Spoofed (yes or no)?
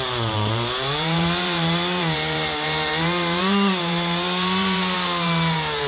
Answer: yes